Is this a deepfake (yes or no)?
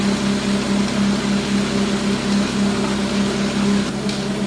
no